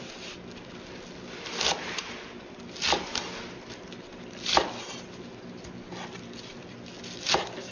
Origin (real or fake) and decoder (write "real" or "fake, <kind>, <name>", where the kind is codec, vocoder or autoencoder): real